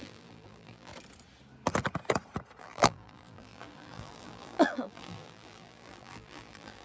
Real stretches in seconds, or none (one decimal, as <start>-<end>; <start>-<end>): 0.9-2.6